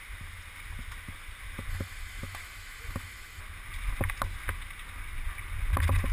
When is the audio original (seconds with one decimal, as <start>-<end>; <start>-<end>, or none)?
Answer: 0.0-1.7; 3.4-6.1